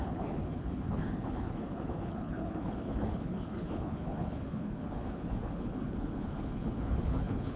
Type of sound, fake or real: fake